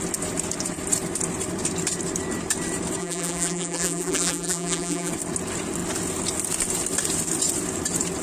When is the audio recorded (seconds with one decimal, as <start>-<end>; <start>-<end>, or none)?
0.0-3.0; 5.1-8.2